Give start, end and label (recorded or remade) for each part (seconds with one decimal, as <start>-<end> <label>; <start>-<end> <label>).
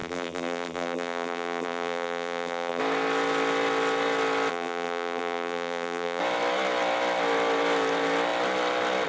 0.0-2.8 remade; 2.8-4.5 recorded; 4.5-6.2 remade; 6.2-9.1 recorded